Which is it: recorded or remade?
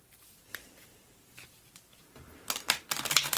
remade